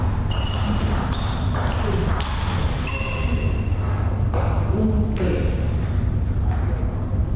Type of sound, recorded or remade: recorded